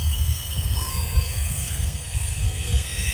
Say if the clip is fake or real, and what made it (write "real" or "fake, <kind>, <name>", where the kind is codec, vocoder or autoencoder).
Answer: fake, codec, SNAC